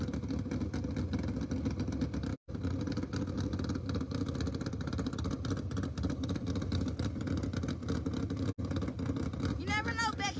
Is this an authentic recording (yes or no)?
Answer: yes